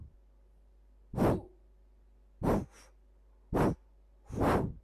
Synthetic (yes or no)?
no